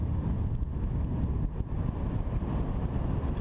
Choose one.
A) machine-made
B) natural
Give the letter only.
B